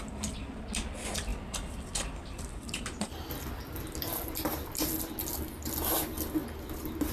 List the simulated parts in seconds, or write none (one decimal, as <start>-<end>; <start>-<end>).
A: 1.3-5.3